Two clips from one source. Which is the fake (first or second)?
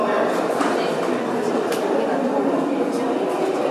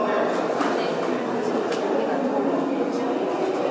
first